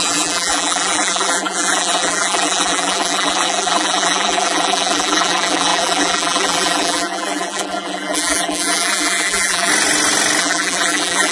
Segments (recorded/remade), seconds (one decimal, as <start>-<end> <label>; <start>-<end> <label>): 0.0-9.7 remade; 9.7-10.4 recorded; 10.4-11.3 remade

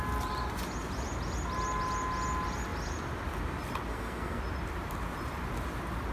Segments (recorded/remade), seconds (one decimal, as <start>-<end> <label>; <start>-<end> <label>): 0.0-3.9 recorded; 3.9-4.4 remade; 4.4-6.1 recorded

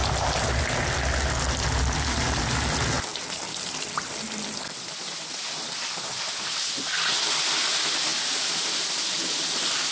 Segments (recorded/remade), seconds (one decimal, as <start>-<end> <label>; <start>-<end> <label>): 0.0-0.6 remade; 0.6-3.1 recorded; 3.1-5.7 remade; 5.7-8.1 recorded; 8.1-8.6 remade; 8.6-9.9 recorded

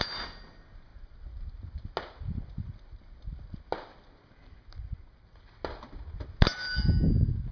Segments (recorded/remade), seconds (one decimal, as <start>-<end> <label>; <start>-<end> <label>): 0.0-7.5 recorded

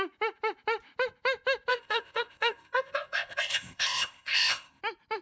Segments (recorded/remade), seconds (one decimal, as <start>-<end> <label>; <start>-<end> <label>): 0.0-1.7 recorded; 1.7-4.8 remade; 4.8-5.2 recorded

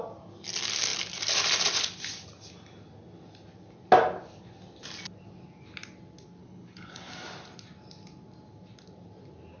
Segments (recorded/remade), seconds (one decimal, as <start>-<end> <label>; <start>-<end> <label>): 0.0-6.4 recorded; 6.4-7.1 remade; 7.1-9.6 recorded